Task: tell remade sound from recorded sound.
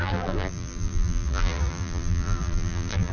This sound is remade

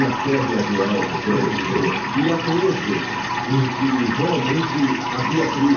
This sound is recorded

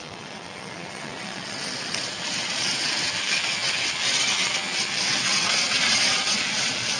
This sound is remade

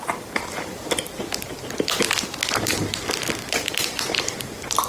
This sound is recorded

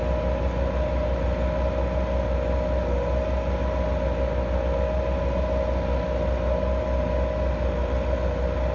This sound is recorded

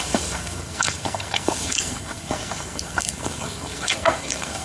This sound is remade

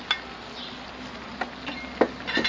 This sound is recorded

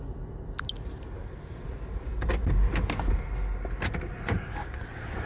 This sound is recorded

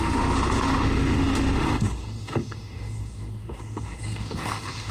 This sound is remade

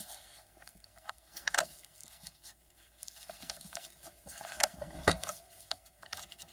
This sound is remade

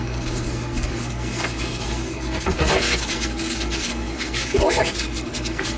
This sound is remade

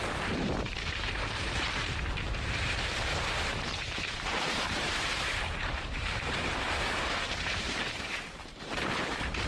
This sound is remade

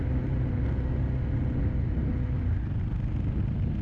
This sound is recorded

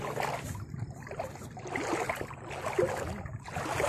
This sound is recorded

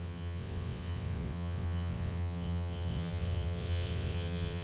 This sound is remade